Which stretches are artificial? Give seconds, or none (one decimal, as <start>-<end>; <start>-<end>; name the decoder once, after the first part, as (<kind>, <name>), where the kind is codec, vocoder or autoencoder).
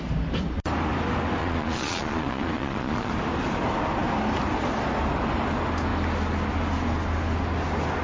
1.4-3.1 (vocoder, Vocos)